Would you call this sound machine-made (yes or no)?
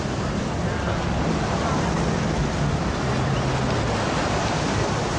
no